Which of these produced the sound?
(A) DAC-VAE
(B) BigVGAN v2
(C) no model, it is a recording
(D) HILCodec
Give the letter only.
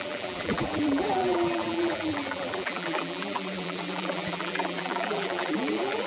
B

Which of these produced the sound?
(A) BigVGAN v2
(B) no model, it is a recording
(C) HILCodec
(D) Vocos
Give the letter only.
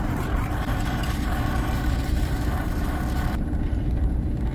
A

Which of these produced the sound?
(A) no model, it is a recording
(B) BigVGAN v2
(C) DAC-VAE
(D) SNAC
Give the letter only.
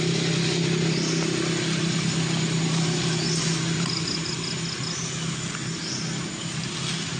A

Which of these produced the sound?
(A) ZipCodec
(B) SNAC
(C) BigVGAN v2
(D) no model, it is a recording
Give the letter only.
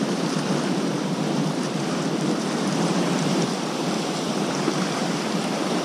C